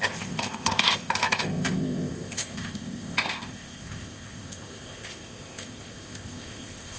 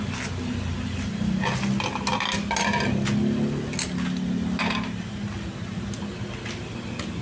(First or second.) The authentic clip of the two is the second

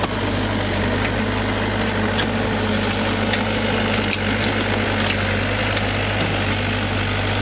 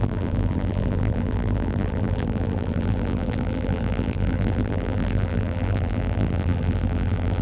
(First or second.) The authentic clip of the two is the first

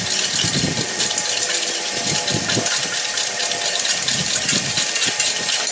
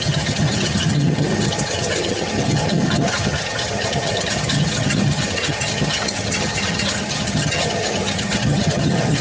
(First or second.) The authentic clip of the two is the first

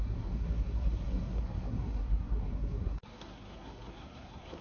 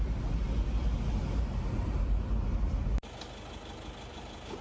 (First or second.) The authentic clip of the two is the second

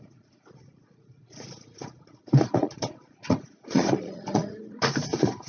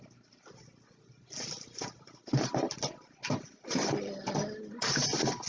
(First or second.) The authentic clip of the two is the second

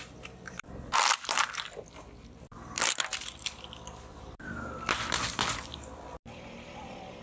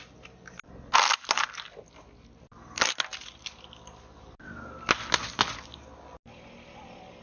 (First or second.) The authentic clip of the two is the second